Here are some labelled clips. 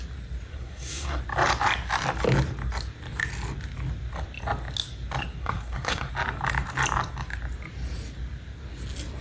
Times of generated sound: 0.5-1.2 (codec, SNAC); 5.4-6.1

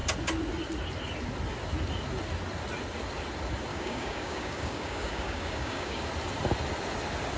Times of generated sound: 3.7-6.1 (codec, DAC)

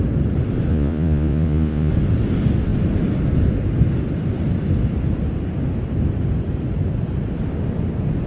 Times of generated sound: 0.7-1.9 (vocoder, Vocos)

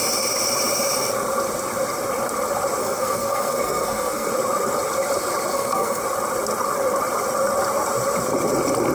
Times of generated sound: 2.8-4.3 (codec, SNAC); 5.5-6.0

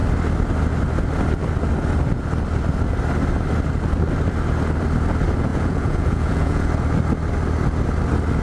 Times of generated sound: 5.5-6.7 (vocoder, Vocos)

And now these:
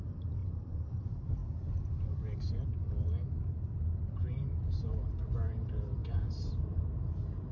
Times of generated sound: 0.4-1.0 (vocoder, BigVGAN v2); 6.0-6.6

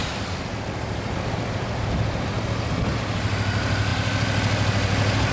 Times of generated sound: 0.0-2.3 (vocoder, BigVGAN v2)